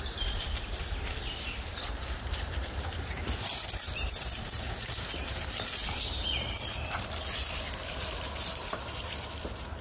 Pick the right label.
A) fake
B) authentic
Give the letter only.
A